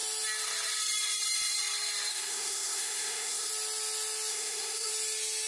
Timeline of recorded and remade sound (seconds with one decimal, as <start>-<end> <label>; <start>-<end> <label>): 0.0-2.1 recorded; 2.1-3.5 remade; 3.5-4.3 recorded; 4.3-4.9 remade; 4.9-5.5 recorded